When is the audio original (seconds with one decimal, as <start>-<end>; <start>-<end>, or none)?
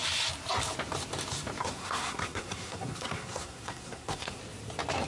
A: 0.0-1.6; 4.4-5.1